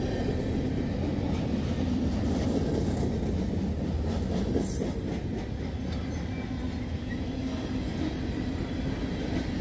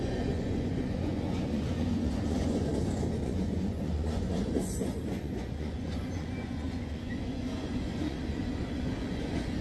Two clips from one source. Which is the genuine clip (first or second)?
first